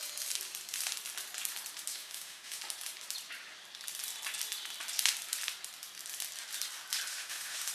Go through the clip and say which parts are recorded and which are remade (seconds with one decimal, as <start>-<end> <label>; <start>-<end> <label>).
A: 0.0-1.9 recorded; 1.9-2.6 remade; 2.6-7.1 recorded; 7.1-7.7 remade